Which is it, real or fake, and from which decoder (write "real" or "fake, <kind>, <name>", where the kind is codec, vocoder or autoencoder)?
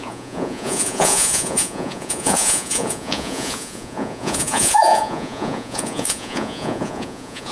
fake, vocoder, Vocos